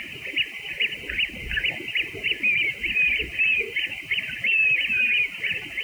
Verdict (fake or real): real